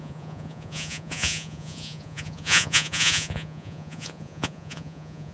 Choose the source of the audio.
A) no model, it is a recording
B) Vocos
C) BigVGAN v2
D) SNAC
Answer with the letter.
B